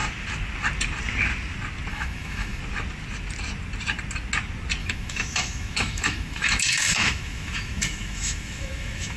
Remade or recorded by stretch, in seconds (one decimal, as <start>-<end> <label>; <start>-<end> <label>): 0.0-1.9 recorded; 1.9-2.6 remade; 2.6-4.8 recorded; 4.8-9.2 remade